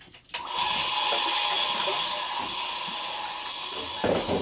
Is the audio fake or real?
real